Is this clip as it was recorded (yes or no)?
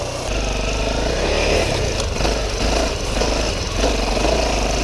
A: yes